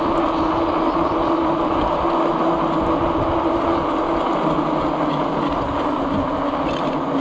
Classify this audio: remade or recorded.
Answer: recorded